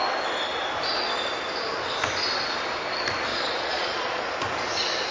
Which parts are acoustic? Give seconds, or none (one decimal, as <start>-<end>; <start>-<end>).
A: 0.0-3.3; 4.2-5.1